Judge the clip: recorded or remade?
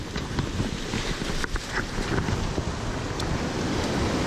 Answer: recorded